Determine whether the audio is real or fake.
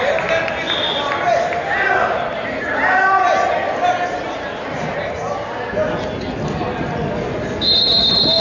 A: real